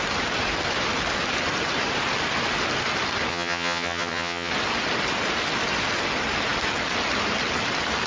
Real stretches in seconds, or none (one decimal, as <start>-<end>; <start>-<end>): 0.0-3.3; 4.5-8.1